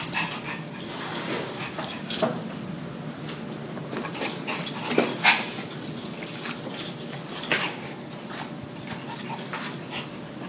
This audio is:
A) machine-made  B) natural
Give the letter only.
B